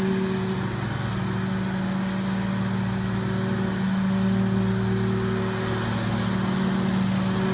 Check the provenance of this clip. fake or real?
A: real